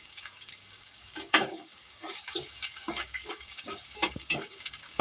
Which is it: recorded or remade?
remade